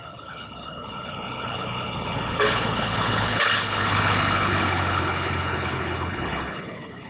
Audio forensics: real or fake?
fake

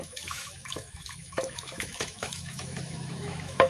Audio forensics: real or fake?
fake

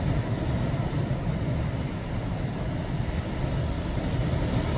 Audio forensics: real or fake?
real